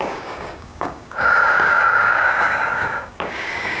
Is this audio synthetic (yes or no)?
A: yes